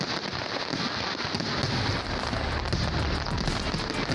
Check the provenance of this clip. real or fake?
real